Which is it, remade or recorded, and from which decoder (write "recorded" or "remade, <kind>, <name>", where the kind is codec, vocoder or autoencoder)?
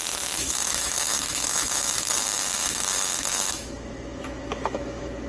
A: remade, autoencoder, DAC-VAE